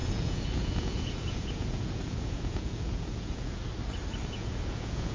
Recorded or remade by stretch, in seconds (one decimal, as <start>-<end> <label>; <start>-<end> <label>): 0.0-3.6 remade; 3.6-4.3 recorded; 4.3-5.1 remade